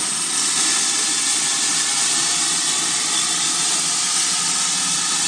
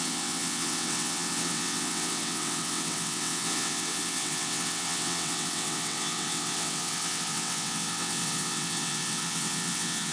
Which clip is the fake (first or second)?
second